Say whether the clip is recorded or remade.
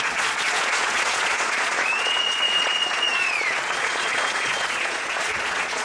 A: remade